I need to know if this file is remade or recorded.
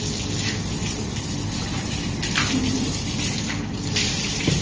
recorded